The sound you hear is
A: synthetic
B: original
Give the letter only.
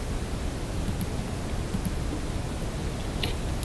B